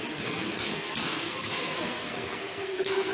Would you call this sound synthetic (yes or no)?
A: yes